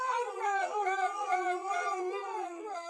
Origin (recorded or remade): remade